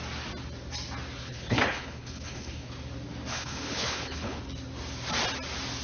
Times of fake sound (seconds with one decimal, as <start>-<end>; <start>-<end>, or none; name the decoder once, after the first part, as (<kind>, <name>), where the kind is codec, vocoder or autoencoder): 1.2-2.7 (codec, HILCodec); 3.3-4.4